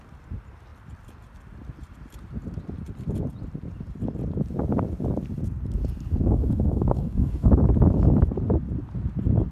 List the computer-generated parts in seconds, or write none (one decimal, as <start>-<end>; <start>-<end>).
6.2-7.5